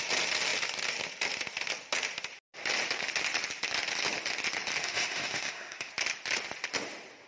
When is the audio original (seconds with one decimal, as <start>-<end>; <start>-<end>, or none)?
0.0-4.8; 5.9-7.3